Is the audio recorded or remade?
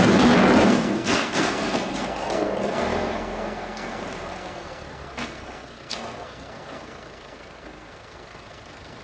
remade